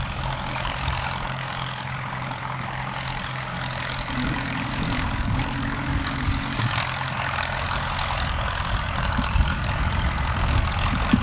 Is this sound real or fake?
fake